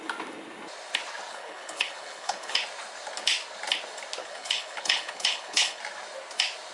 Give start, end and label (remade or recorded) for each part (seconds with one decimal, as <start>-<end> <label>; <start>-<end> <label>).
0.0-1.3 recorded; 1.3-2.6 remade; 2.6-4.2 recorded; 4.2-5.8 remade; 5.8-6.7 recorded